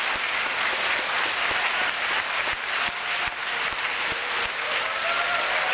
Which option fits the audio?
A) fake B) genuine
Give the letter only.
B